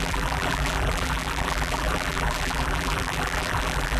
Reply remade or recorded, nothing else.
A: remade